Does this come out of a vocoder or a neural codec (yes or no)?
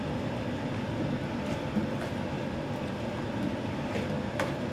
no